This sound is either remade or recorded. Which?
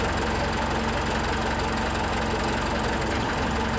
recorded